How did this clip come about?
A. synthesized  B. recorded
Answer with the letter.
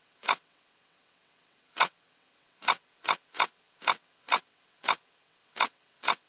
A